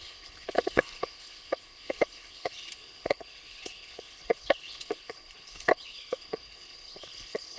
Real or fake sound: fake